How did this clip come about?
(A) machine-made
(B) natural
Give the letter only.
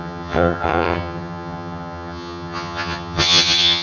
A